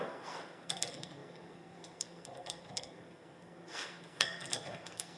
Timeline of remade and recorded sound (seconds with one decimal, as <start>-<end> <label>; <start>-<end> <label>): 0.0-5.2 remade